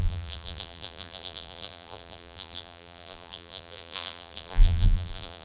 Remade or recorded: remade